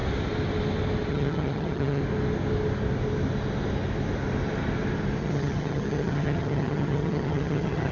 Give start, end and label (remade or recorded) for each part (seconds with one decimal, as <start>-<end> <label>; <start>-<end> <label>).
0.0-1.1 recorded; 1.1-2.0 remade; 2.0-5.2 recorded; 5.2-7.9 remade